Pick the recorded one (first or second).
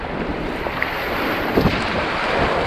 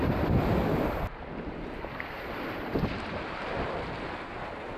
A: second